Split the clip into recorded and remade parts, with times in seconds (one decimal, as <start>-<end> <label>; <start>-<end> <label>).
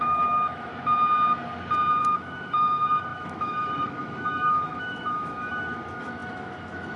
0.0-0.7 remade; 0.7-2.0 recorded; 2.0-7.0 remade